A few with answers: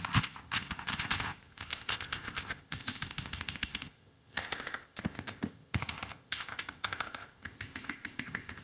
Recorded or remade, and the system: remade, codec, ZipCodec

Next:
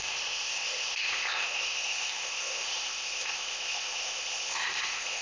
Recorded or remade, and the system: remade, codec, ZipCodec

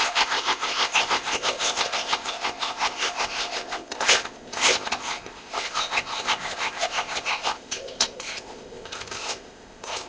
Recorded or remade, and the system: remade, codec, ZipCodec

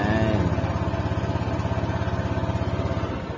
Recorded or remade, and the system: recorded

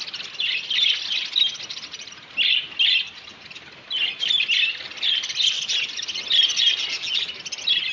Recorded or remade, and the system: recorded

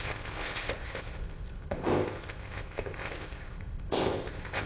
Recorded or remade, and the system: remade, codec, ZipCodec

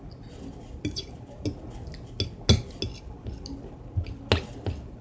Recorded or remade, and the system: recorded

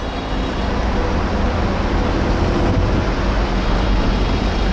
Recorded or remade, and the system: recorded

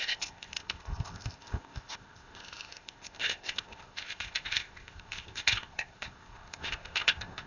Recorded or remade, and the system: remade, codec, ZipCodec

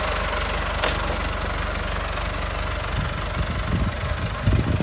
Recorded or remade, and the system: recorded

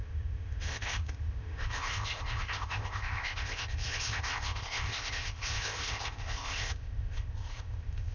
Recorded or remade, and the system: remade, codec, ZipCodec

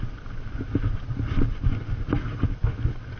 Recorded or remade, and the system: recorded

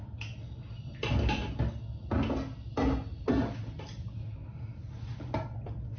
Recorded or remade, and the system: recorded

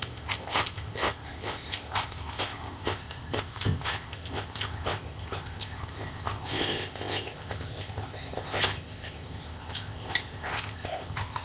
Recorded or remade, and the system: remade, codec, ZipCodec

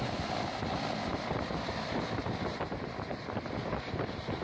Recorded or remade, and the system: recorded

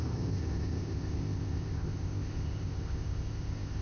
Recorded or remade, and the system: remade, codec, ZipCodec